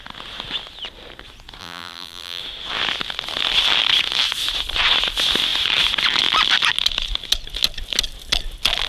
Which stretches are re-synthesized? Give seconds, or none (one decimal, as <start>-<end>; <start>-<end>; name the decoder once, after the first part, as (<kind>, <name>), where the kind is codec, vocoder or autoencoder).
1.6-2.4 (vocoder, BigVGAN v2)